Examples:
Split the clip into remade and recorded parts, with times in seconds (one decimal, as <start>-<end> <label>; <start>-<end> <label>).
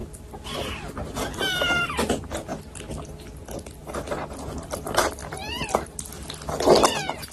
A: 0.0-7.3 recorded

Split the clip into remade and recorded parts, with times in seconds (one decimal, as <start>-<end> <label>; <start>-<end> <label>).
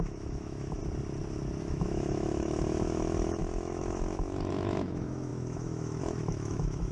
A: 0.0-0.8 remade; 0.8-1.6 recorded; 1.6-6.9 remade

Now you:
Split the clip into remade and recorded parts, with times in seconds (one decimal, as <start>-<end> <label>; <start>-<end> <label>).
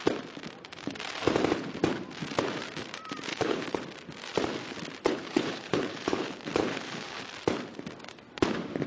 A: 0.0-3.3 recorded; 3.3-3.8 remade; 3.8-5.0 recorded; 5.0-7.2 remade; 7.2-8.9 recorded